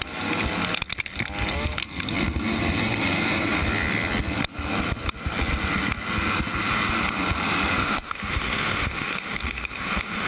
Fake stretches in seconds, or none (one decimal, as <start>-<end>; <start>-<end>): 7.8-10.3